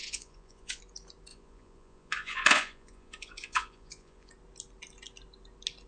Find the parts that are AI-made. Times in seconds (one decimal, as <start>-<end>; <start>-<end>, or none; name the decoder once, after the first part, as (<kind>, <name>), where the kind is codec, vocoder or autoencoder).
0.0-0.8 (vocoder, Vocos); 1.3-4.3

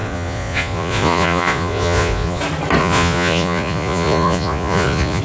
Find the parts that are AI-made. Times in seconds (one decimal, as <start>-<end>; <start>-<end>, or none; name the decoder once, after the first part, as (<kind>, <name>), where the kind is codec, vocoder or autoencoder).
0.0-2.4 (vocoder, Vocos); 2.8-5.2

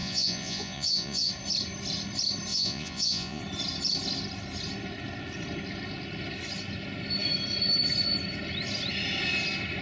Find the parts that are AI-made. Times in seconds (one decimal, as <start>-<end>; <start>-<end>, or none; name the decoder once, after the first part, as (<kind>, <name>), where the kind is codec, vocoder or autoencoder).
0.0-1.3 (vocoder, Vocos); 2.5-3.4

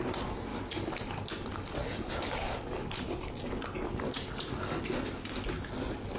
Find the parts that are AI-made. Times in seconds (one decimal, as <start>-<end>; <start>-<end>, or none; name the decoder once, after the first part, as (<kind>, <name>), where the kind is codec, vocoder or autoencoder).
none